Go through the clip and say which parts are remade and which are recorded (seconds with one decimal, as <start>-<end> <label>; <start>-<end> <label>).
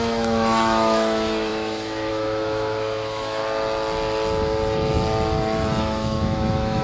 0.0-3.4 remade; 3.4-5.8 recorded; 5.8-6.8 remade